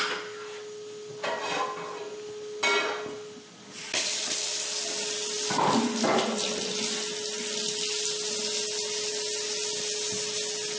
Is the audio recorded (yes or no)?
yes